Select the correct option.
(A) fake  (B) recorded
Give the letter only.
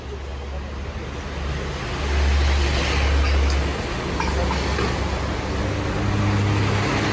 B